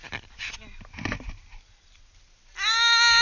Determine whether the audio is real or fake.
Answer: real